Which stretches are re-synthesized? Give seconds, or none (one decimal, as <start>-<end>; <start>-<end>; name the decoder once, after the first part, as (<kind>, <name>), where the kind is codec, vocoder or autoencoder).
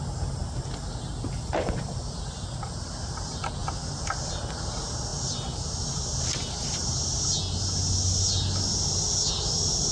none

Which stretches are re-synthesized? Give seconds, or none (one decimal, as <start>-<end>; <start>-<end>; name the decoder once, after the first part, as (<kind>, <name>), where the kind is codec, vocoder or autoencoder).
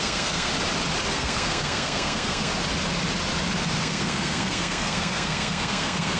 0.0-0.5 (codec, SNAC); 1.1-2.5; 3.8-6.2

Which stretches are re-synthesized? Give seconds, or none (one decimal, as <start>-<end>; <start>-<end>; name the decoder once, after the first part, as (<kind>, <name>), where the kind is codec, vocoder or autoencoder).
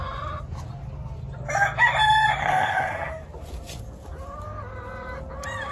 2.4-3.1 (codec, SNAC)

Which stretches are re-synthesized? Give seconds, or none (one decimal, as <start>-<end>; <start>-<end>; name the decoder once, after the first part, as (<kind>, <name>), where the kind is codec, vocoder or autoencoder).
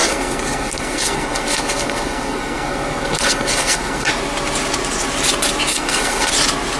0.0-4.1 (codec, SNAC); 5.7-6.3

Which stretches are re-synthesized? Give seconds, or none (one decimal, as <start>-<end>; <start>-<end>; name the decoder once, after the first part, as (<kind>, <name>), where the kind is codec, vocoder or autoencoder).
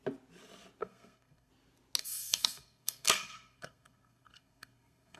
0.8-1.5 (codec, SNAC); 2.0-5.2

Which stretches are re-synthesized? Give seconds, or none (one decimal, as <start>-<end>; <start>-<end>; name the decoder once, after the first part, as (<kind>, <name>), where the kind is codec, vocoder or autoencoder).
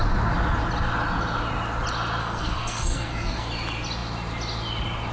2.2-3.5 (codec, SNAC)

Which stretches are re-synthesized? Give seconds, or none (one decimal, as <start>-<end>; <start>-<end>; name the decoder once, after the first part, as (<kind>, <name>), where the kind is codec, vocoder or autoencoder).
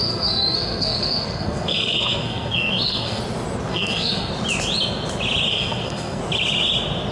0.0-3.2 (codec, SNAC); 3.7-4.3; 5.5-6.2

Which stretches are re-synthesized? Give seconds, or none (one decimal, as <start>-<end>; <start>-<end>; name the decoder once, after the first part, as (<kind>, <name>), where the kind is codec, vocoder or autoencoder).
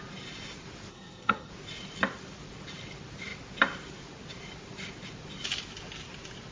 0.9-1.5 (codec, SNAC)